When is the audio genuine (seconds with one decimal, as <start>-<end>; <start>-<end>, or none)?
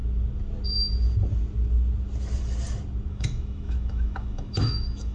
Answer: 0.0-3.1